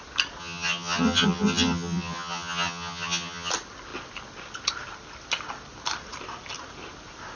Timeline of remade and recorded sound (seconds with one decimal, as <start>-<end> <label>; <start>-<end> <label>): 0.0-0.4 recorded; 0.4-3.5 remade; 3.5-7.4 recorded